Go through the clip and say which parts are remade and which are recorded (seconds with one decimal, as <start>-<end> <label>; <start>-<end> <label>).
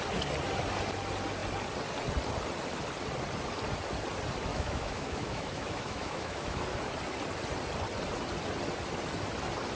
0.0-4.5 recorded; 4.5-6.6 remade; 6.6-9.8 recorded